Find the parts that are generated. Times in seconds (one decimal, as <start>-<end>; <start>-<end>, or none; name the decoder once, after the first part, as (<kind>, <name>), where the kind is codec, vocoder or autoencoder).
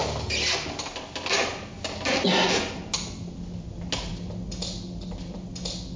none